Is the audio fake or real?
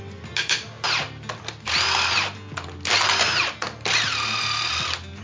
real